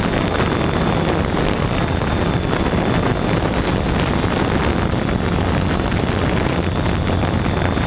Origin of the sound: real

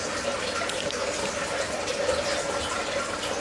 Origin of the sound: real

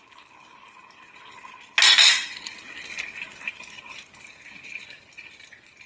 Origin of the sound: real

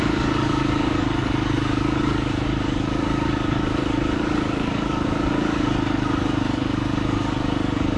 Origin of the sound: fake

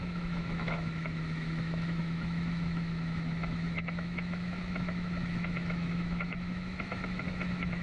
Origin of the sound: fake